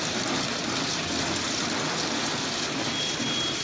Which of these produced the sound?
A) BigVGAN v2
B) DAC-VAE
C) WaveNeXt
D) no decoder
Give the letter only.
D